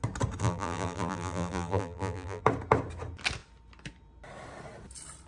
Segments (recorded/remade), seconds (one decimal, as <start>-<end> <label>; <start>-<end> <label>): 0.0-0.4 recorded; 0.4-2.4 remade; 2.4-5.3 recorded